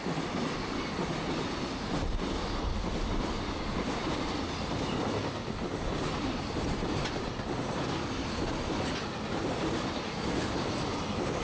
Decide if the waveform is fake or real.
real